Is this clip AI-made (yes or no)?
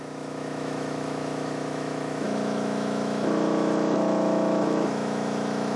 yes